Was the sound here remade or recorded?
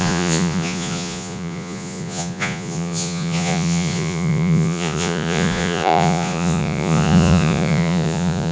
remade